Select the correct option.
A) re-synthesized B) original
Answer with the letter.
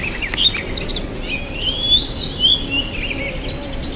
B